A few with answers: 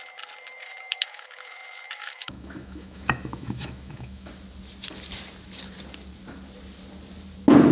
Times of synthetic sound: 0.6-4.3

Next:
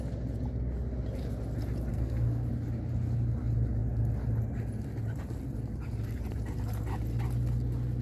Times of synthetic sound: 1.9-2.5

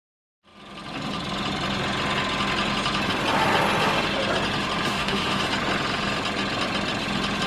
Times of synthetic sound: 4.9-5.4

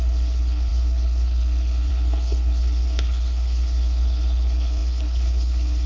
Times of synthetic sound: 0.0-5.9

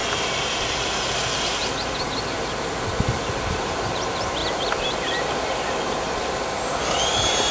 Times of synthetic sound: 0.0-1.6; 3.5-7.5